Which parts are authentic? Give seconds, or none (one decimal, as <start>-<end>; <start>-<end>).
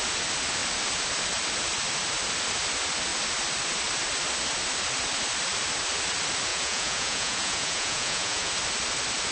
0.0-6.5; 8.5-9.3